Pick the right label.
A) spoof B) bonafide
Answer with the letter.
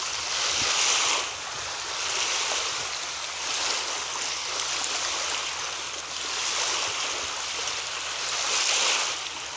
B